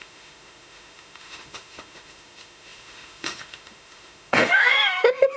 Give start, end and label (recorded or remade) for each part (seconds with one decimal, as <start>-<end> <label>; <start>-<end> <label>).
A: 0.0-5.4 remade